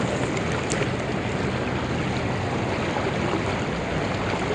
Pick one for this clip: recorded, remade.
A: recorded